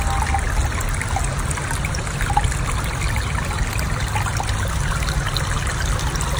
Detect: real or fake real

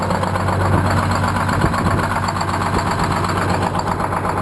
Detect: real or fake real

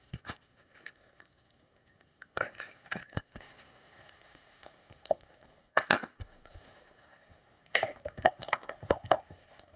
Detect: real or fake fake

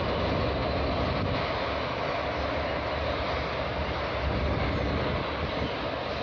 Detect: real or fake real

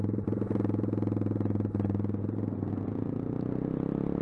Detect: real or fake real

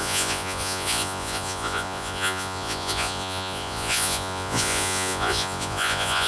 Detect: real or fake fake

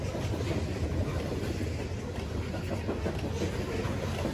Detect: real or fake real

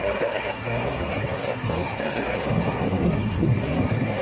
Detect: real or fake fake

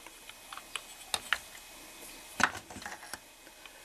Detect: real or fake real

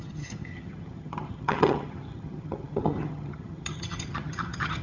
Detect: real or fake fake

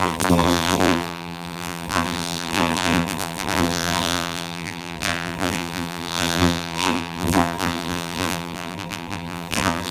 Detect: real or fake fake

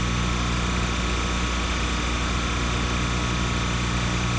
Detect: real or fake real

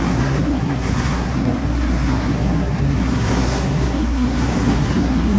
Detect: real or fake fake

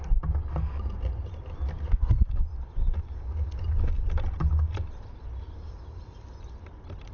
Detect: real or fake real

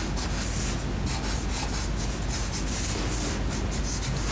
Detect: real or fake real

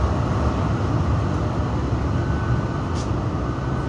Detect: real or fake real